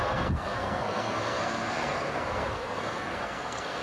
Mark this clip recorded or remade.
remade